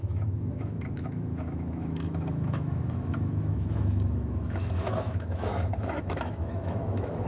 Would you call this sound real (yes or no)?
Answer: no